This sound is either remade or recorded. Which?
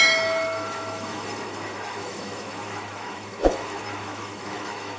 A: remade